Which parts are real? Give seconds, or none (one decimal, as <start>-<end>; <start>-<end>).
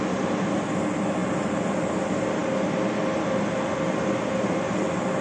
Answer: 0.0-1.2; 2.0-5.2